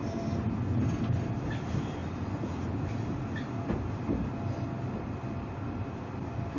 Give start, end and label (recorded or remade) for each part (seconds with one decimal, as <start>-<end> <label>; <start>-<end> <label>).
0.0-1.5 recorded; 1.5-2.0 remade; 2.0-6.0 recorded; 6.0-6.6 remade